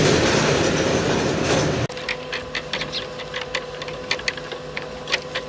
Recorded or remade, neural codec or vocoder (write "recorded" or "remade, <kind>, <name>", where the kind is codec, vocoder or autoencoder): recorded